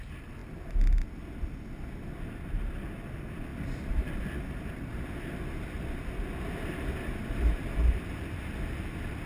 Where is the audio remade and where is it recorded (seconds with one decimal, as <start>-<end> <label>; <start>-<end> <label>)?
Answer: 0.0-3.5 recorded; 3.5-4.2 remade; 4.2-7.8 recorded; 7.8-8.4 remade; 8.4-9.3 recorded